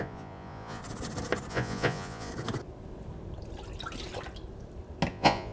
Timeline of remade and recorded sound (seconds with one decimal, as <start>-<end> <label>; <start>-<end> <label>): 0.0-0.8 remade; 0.8-1.5 recorded; 1.5-2.3 remade; 2.3-5.1 recorded; 5.1-5.5 remade